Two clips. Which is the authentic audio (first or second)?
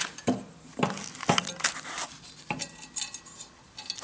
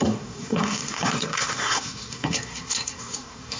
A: first